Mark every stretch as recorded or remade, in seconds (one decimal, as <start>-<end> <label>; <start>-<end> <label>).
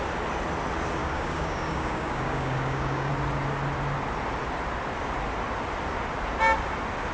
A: 0.0-1.0 recorded; 1.0-3.1 remade; 3.1-7.1 recorded